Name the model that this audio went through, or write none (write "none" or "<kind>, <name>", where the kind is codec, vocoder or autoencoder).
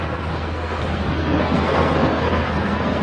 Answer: codec, SNAC